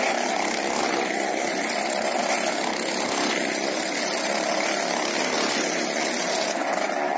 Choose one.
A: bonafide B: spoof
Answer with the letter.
A